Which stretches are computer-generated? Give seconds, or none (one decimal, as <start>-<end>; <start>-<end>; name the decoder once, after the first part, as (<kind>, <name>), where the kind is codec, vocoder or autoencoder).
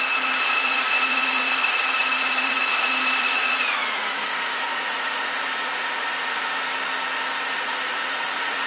0.0-6.7 (vocoder, Vocos); 7.3-8.7